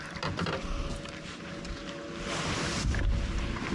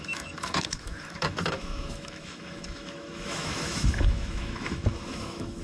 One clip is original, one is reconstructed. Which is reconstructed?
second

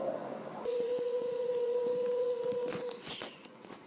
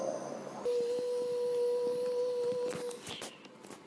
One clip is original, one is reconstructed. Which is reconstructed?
first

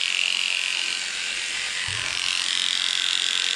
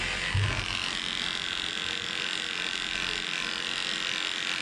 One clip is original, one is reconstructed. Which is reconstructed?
first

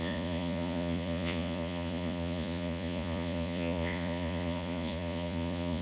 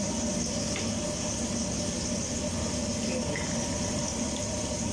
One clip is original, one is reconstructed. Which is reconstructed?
first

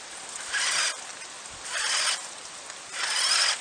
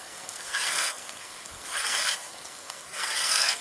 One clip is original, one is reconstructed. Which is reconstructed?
second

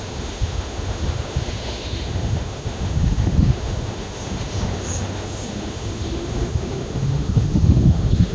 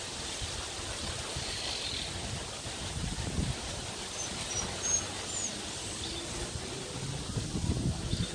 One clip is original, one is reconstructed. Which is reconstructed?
first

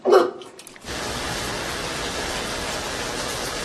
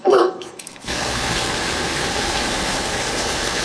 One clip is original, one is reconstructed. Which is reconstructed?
second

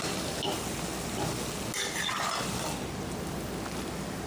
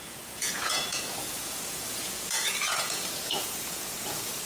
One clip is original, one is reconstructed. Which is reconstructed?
second